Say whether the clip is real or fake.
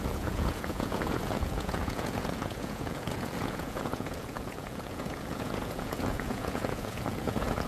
fake